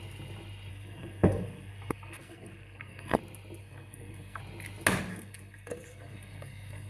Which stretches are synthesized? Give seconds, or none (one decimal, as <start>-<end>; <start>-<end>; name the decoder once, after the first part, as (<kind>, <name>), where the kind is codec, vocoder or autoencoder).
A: 0.7-3.2 (codec, SNAC); 3.6-4.4; 5.1-6.9